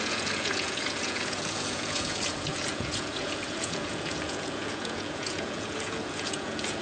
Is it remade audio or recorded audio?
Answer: remade